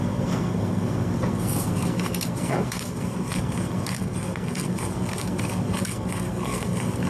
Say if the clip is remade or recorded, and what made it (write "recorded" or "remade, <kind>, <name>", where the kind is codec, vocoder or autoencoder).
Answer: remade, codec, SNAC